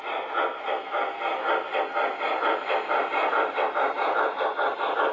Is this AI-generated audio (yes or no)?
no